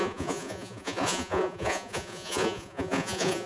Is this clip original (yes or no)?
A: no